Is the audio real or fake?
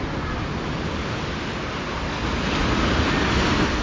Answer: real